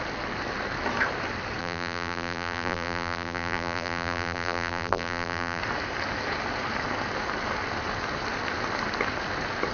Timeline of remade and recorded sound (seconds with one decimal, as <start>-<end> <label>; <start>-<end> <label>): 0.0-1.6 recorded; 1.6-5.6 remade; 5.6-9.7 recorded